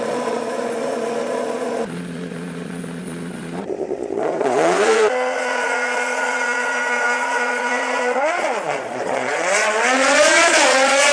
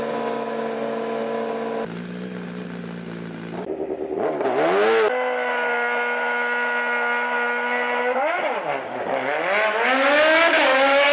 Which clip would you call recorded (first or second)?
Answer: second